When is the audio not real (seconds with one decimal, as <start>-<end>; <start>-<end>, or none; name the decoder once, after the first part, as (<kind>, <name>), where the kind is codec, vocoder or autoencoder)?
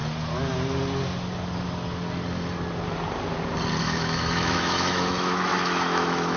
3.8-6.4 (autoencoder, DAC-VAE)